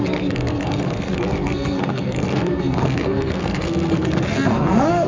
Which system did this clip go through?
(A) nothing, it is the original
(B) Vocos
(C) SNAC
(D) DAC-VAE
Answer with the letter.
C